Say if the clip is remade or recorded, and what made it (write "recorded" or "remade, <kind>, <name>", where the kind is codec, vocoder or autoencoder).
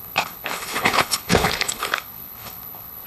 remade, codec, HILCodec